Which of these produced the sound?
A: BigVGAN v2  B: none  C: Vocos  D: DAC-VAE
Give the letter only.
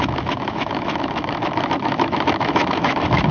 D